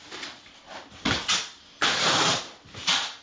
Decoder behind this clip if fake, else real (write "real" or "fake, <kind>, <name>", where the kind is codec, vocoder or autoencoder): real